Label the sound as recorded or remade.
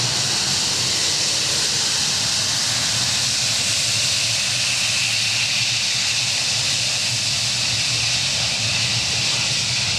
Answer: recorded